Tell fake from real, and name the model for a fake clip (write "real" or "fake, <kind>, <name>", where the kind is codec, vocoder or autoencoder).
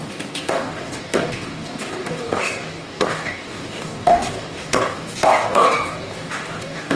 fake, codec, DAC